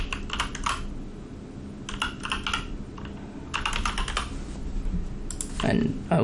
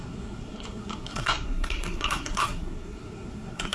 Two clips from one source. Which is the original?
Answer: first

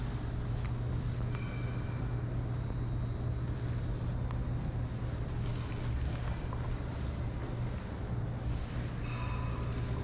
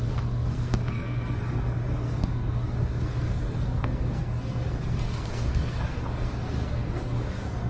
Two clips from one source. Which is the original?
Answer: first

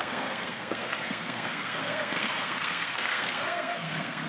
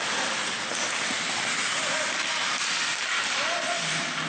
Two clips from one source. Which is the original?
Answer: second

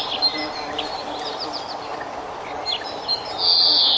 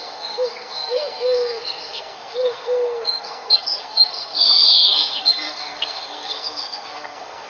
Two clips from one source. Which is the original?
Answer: first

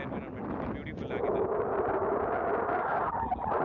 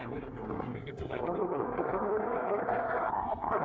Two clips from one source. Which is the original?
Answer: first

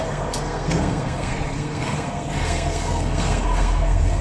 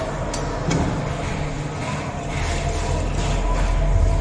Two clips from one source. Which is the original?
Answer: second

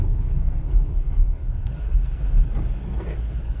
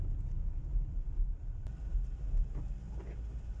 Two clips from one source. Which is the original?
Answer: second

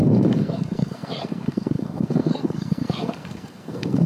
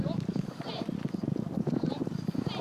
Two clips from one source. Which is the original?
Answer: second